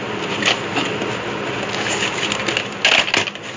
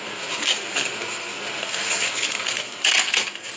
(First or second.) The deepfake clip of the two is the second